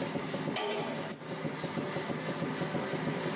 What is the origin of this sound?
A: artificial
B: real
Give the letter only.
B